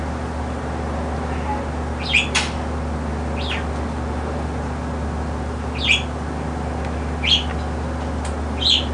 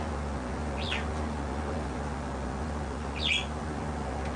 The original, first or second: first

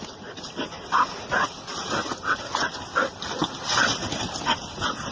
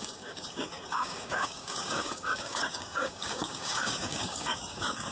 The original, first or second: first